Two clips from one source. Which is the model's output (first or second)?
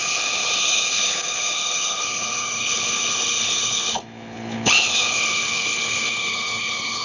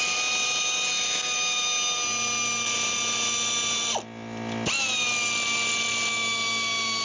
first